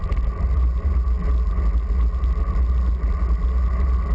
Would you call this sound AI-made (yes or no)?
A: no